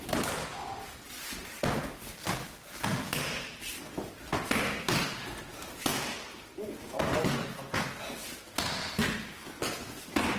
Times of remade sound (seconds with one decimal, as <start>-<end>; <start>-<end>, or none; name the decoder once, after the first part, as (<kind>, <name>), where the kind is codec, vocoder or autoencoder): none